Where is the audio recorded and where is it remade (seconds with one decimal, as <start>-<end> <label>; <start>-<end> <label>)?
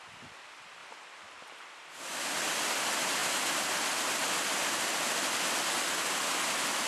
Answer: 0.0-3.2 remade; 3.2-4.0 recorded; 4.0-6.9 remade